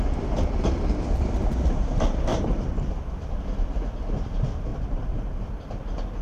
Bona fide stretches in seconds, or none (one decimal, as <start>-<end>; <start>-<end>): 0.0-2.3; 2.9-4.7; 5.4-6.2